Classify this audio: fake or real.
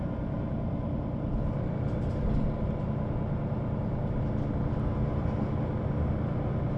real